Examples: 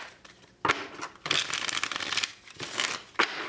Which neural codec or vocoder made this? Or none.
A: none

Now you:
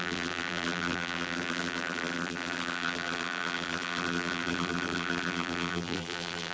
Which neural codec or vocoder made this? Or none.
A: vocoder, BigVGAN v2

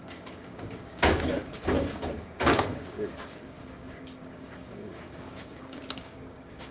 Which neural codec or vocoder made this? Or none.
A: codec, DAC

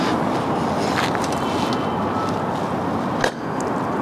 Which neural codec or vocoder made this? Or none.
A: none